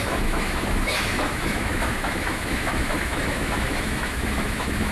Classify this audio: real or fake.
fake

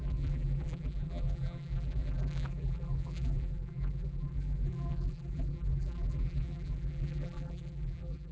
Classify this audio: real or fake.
fake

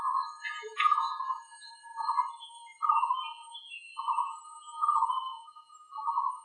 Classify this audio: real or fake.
fake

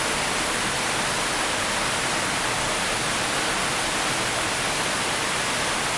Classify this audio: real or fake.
real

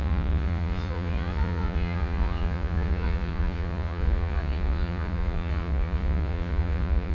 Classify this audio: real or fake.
fake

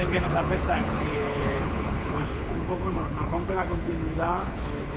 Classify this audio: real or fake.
fake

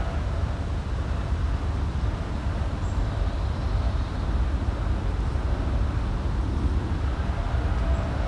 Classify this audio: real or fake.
real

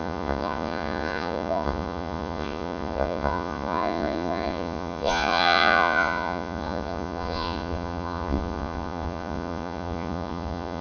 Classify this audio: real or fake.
fake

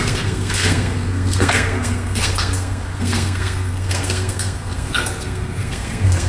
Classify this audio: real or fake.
fake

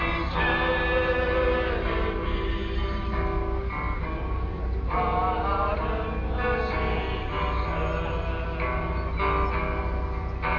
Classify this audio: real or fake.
real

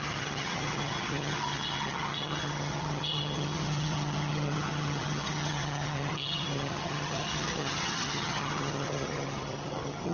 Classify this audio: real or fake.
fake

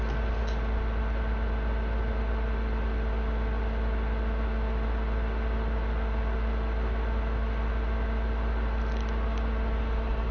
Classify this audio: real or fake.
real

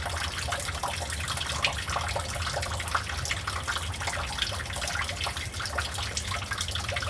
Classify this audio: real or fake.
real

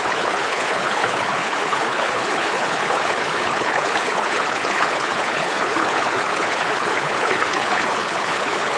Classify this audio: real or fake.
fake